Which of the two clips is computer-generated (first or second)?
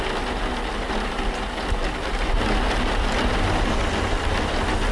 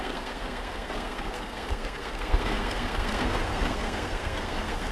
second